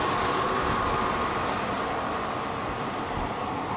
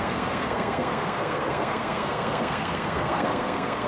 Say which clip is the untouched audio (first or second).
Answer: first